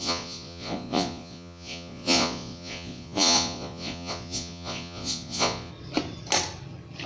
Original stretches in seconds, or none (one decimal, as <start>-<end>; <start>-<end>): 5.7-7.1